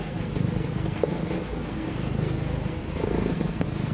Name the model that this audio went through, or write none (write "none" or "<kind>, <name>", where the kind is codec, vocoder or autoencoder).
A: codec, SNAC